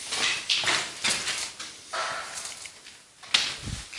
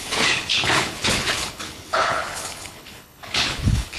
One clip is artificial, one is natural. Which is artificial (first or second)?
second